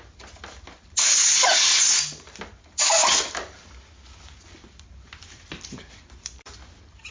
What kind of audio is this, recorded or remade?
recorded